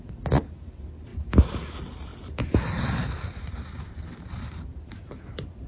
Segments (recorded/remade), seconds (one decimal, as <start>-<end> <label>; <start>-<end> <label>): 0.0-1.1 recorded; 1.1-1.7 remade; 1.7-2.1 recorded; 2.1-5.7 remade